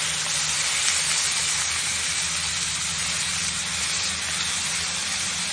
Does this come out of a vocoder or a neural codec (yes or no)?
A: no